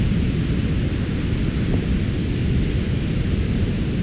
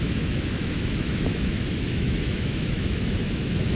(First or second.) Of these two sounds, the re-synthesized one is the second